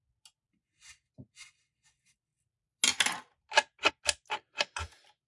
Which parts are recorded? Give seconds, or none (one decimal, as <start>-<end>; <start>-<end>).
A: 0.0-5.3

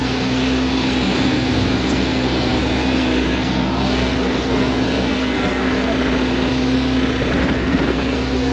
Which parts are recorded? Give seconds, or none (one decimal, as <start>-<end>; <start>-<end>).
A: 5.9-7.4

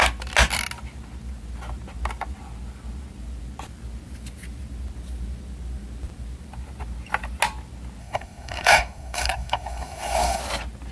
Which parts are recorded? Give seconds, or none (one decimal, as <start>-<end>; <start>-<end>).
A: 0.0-8.0; 10.4-10.9

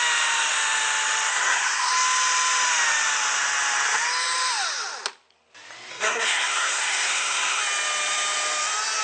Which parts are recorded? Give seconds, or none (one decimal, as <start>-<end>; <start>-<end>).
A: 0.0-1.3; 1.9-5.9; 7.6-9.0

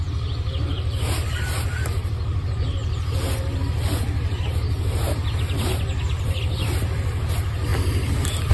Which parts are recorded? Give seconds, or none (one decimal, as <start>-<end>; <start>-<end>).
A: 0.0-8.5

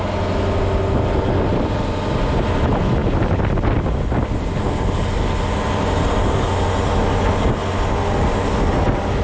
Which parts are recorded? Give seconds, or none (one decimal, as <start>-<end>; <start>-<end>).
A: 0.0-9.2

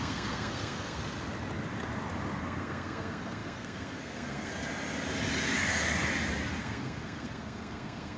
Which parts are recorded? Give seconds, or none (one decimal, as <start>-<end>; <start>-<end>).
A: 1.0-2.4; 4.5-6.6

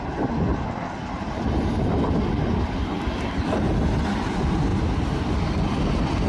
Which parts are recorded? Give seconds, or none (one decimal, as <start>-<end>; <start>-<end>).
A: 0.0-6.3